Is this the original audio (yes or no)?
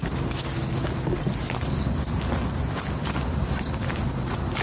yes